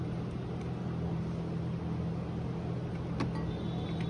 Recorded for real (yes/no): yes